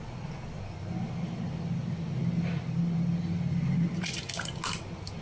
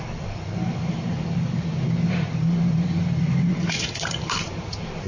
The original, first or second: first